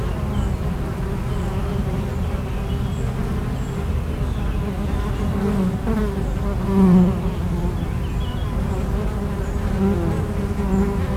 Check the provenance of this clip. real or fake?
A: real